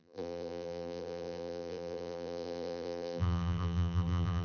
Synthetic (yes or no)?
yes